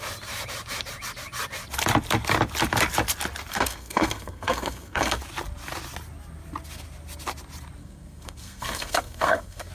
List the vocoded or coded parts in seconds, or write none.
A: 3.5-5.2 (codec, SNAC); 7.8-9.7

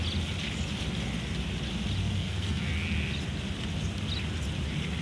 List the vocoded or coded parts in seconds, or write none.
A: 2.0-2.7 (codec, SNAC)

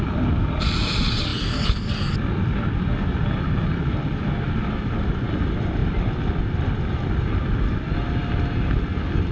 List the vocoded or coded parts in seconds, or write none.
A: none

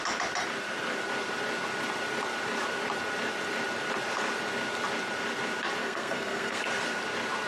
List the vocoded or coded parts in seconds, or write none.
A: 5.8-6.6 (codec, SNAC)

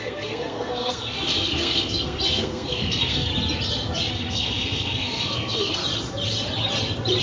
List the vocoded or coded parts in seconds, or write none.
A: 0.0-3.3 (codec, SNAC); 4.1-5.8

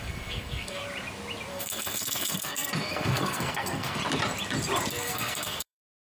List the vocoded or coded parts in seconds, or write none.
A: 0.0-0.8 (codec, SNAC); 1.5-4.0; 4.9-6.1

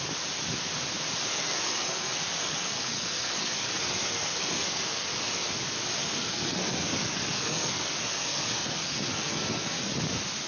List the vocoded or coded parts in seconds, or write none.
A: 1.3-5.5 (codec, SNAC); 6.0-9.8